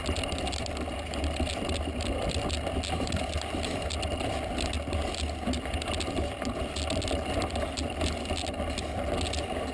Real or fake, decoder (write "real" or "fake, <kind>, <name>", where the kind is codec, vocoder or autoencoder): real